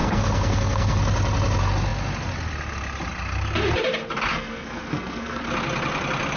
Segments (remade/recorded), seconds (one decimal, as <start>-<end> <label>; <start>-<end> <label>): 0.0-1.0 remade; 1.0-4.3 recorded; 4.3-5.4 remade; 5.4-6.4 recorded